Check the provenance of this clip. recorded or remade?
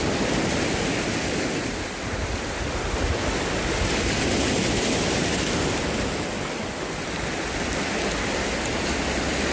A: recorded